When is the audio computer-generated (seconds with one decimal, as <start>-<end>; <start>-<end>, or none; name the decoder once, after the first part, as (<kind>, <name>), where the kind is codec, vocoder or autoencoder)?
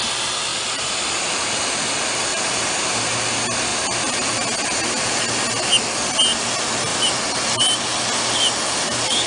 2.3-3.0 (vocoder, BigVGAN v2); 3.7-4.3